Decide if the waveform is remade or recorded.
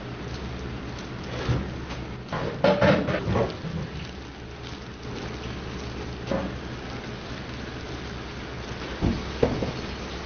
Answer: recorded